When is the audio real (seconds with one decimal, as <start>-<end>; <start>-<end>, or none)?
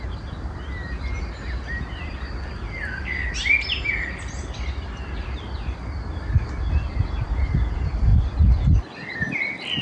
0.0-9.8